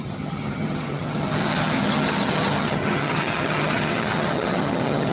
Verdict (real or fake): fake